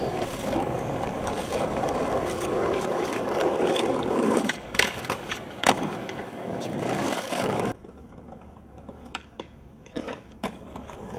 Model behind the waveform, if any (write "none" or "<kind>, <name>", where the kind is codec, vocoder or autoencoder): codec, DAC